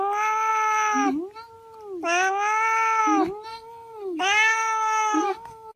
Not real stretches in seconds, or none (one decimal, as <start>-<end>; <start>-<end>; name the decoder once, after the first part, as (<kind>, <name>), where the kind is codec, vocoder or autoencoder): 3.5-5.8 (codec, SNAC)